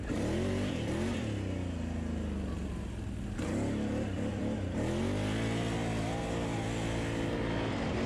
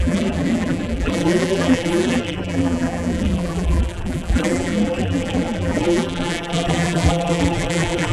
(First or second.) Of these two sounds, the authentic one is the first